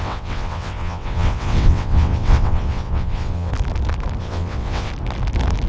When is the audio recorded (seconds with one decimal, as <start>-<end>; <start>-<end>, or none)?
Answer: 3.5-4.2; 4.9-5.7